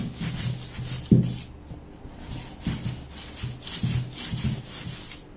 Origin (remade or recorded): recorded